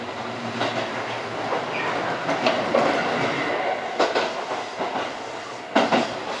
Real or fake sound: real